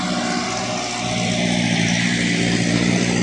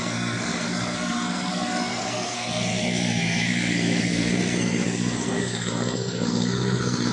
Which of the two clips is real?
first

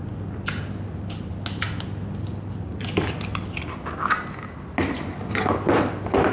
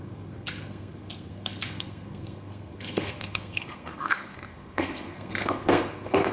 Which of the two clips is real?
first